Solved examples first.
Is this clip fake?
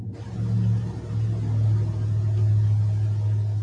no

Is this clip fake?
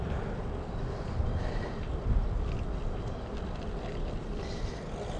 no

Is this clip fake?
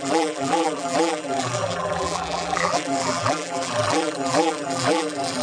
yes